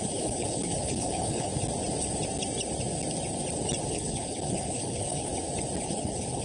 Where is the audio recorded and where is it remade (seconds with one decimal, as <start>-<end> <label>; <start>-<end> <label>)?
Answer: 0.0-1.5 remade; 1.5-3.9 recorded; 3.9-5.3 remade; 5.3-5.8 recorded; 5.8-6.4 remade